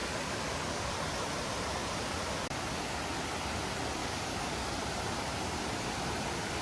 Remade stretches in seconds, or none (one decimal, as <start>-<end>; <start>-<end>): 0.0-0.9; 4.0-4.7

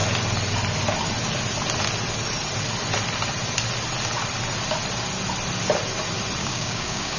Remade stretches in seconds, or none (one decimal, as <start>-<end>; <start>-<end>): 6.4-7.2

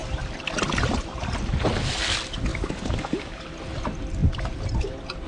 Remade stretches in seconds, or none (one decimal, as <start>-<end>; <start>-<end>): 2.5-3.4